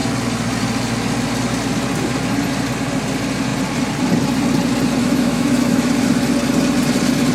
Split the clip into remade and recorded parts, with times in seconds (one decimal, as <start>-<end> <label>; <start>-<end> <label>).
0.0-5.0 recorded; 5.0-5.9 remade; 5.9-7.3 recorded